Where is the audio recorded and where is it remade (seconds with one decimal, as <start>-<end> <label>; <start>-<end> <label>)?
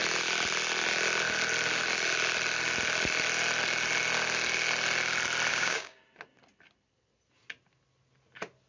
0.0-5.5 recorded; 5.5-6.0 remade; 6.0-8.7 recorded